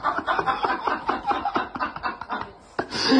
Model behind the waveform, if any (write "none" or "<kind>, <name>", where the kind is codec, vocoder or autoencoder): none